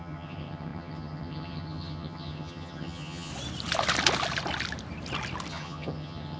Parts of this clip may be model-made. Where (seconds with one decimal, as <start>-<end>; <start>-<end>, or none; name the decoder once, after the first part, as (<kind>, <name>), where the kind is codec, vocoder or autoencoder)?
0.0-3.3 (vocoder, HiFi-GAN); 5.5-6.4